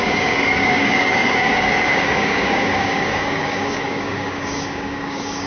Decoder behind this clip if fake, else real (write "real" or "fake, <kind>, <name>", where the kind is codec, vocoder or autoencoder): fake, codec, DAC